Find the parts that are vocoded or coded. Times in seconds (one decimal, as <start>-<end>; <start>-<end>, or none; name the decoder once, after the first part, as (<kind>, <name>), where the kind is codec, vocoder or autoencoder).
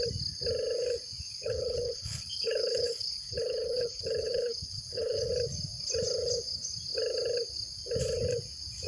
1.3-5.3 (codec, HILCodec)